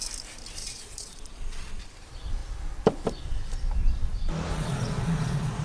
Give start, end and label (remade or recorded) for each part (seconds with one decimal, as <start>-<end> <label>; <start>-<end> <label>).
0.0-0.6 recorded; 0.6-1.8 remade; 1.8-4.5 recorded; 4.5-5.6 remade